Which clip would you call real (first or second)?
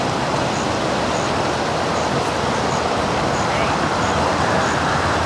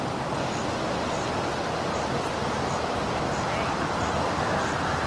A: second